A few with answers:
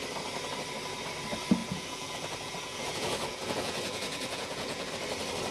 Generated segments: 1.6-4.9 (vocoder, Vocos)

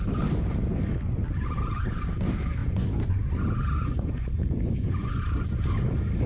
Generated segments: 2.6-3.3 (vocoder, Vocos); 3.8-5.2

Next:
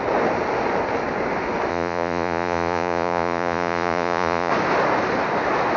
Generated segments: 1.7-4.5 (vocoder, Vocos)

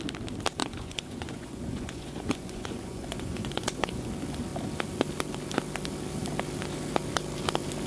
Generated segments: 0.6-4.1 (vocoder, Vocos)